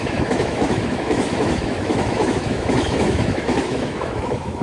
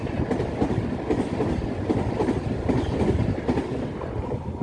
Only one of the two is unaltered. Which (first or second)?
second